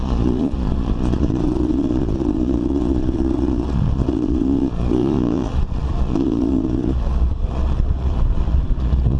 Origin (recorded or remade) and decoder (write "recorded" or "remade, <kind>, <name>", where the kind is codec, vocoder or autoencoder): remade, vocoder, Vocos